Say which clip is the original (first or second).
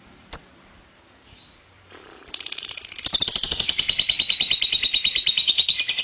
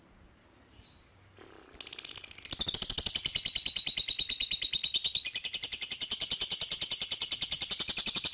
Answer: second